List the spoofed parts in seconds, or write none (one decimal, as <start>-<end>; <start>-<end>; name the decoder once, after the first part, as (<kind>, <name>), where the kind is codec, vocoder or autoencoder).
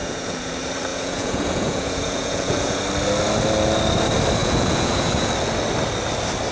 0.0-0.5 (vocoder, Vocos); 0.9-2.8; 4.4-5.3